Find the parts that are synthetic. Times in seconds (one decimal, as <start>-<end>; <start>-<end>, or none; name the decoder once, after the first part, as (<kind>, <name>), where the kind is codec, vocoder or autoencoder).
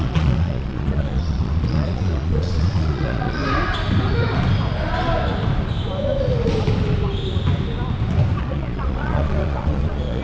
0.0-3.4 (vocoder, Vocos); 8.4-10.2